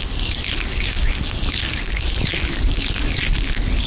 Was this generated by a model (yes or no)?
no